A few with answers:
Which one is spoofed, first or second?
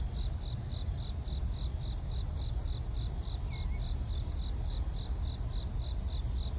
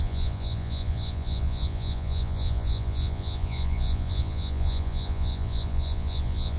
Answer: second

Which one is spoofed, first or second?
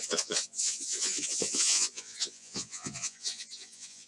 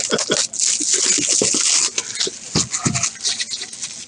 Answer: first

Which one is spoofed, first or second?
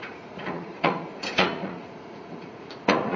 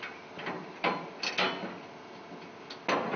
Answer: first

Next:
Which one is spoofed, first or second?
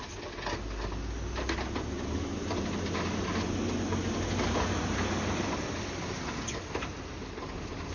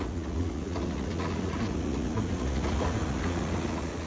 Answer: second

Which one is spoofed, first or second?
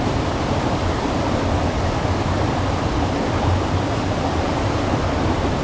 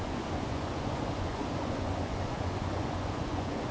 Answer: second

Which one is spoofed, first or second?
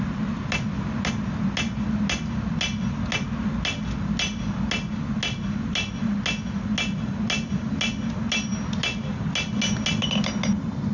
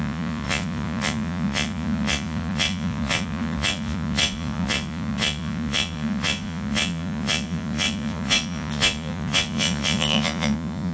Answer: second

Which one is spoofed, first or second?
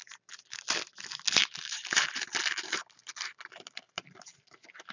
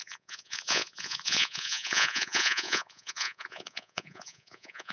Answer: second